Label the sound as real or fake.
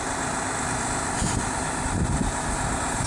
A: real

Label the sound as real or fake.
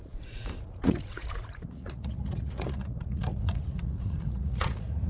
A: fake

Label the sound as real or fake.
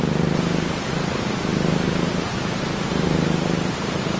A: fake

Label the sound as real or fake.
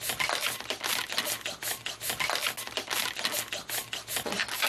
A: real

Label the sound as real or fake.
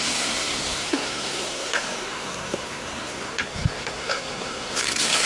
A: fake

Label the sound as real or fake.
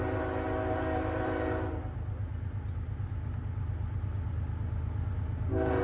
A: real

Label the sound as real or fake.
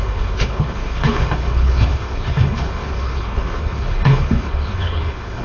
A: fake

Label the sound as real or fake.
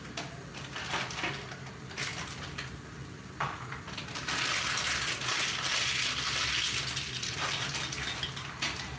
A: real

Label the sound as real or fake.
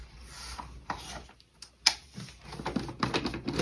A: real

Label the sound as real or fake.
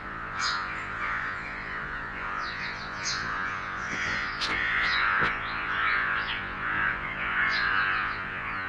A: fake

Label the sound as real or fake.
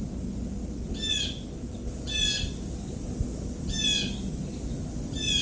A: real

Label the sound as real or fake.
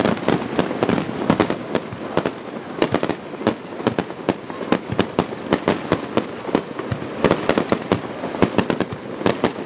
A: real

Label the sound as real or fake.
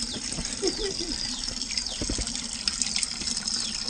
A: real